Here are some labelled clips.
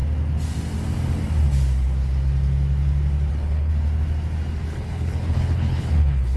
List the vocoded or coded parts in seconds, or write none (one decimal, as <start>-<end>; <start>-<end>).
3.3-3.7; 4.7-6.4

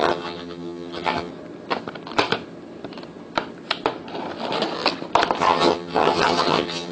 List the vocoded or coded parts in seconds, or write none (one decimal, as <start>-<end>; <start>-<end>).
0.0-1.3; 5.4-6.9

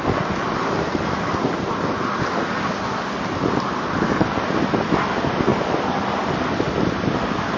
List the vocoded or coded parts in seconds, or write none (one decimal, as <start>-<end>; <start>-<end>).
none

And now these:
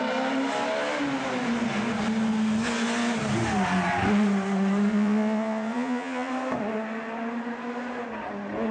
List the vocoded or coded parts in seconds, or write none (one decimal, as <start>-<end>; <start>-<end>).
4.9-6.3

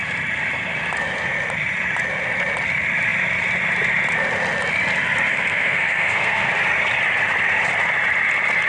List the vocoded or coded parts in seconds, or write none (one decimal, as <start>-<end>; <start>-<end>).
5.3-6.5

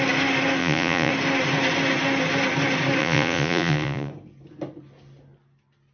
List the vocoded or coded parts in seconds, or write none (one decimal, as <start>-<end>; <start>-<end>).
0.6-1.1; 3.0-4.1